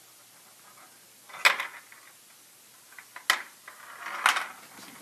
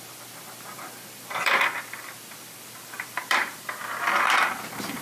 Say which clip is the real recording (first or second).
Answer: first